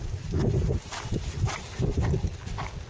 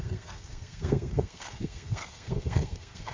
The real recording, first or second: first